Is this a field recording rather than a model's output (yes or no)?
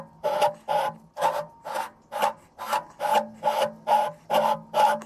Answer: yes